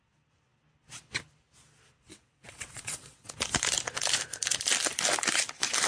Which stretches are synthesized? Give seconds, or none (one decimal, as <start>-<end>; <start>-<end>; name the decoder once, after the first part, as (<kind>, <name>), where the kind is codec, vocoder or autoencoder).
2.1-3.3 (vocoder, WaveNeXt)